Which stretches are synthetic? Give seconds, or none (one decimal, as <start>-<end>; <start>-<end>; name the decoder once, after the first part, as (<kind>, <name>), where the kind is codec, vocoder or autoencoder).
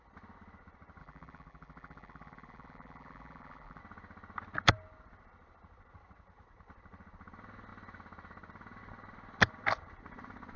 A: 1.0-3.8 (vocoder, BigVGAN v2)